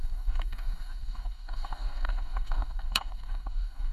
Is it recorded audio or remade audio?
remade